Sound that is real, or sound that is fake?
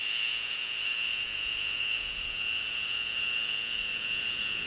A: fake